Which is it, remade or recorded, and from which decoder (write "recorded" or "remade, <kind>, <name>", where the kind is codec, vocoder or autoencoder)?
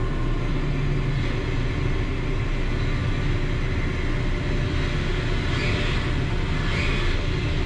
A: recorded